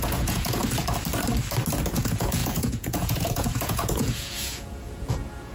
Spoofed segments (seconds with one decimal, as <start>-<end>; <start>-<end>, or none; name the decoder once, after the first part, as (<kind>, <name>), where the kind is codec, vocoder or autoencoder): 0.0-0.6 (vocoder, Vocos); 1.9-5.5